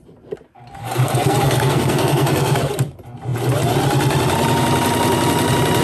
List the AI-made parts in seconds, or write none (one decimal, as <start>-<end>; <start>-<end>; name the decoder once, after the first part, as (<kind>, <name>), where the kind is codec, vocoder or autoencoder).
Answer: 0.8-2.7 (codec, SNAC)